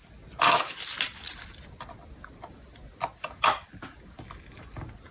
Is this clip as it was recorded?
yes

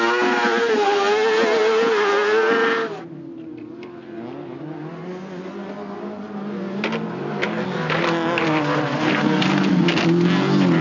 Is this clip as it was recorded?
yes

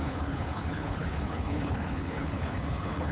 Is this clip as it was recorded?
no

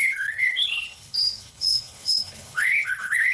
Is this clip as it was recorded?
no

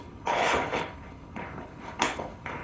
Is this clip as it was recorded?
no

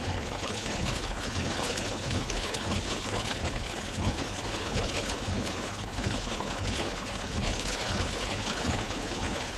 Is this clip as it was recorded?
no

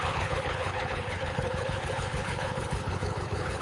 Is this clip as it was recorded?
no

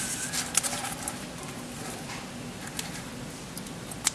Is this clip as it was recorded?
yes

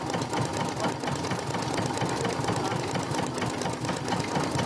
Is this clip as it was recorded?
yes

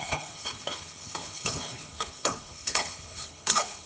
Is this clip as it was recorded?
no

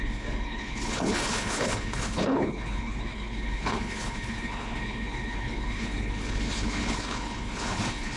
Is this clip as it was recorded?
no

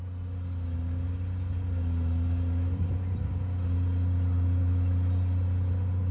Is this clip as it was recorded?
yes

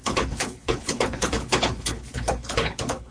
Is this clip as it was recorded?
no